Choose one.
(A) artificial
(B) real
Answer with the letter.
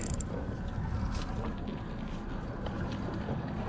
B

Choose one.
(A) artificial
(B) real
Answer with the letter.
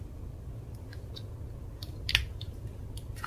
B